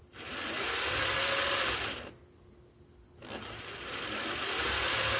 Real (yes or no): yes